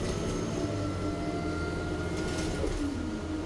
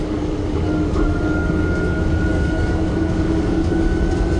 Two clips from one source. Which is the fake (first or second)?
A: second